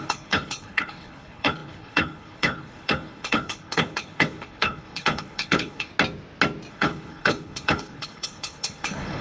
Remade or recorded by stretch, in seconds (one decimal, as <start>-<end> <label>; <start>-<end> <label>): 0.0-5.9 remade; 5.9-6.7 recorded; 6.7-9.2 remade